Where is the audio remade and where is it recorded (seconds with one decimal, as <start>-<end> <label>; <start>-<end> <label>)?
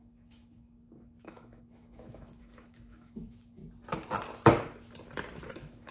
0.0-3.6 remade; 3.6-5.5 recorded; 5.5-5.9 remade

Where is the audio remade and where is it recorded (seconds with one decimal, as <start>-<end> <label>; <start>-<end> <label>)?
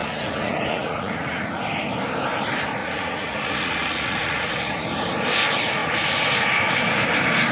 0.0-1.6 remade; 1.6-2.8 recorded; 2.8-4.9 remade; 4.9-7.5 recorded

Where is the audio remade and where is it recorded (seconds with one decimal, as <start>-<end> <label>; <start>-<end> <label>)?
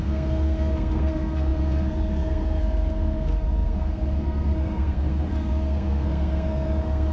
0.0-7.1 remade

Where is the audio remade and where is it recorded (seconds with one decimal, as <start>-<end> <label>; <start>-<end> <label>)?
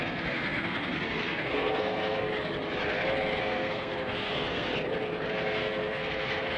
0.0-2.3 remade; 2.3-3.4 recorded; 3.4-4.7 remade; 4.7-5.3 recorded; 5.3-6.6 remade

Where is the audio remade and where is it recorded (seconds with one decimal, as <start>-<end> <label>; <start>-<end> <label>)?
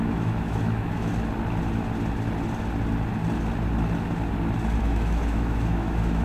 0.0-1.1 remade; 1.1-4.8 recorded; 4.8-6.2 remade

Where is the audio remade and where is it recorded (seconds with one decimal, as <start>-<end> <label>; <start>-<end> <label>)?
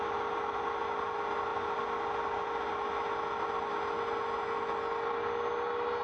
0.0-6.0 recorded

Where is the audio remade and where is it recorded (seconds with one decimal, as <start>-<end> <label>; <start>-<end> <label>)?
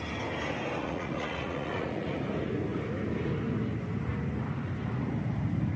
0.0-0.8 recorded; 0.8-2.2 remade; 2.2-5.8 recorded